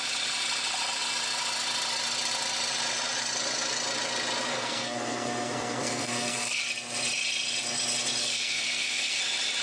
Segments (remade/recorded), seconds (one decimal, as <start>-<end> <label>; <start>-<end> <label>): 0.0-4.5 recorded; 4.5-6.6 remade; 6.6-8.2 recorded; 8.2-9.2 remade; 9.2-9.6 recorded